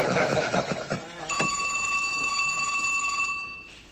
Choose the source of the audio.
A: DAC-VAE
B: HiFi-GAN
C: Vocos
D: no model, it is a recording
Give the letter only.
A